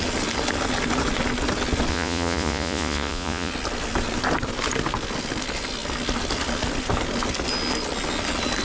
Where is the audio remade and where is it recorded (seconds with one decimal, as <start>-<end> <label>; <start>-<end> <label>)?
0.0-1.9 recorded; 1.9-3.5 remade; 3.5-8.6 recorded